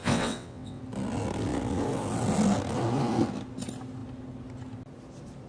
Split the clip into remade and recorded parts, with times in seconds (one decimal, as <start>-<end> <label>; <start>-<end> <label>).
0.0-0.8 remade; 0.8-5.5 recorded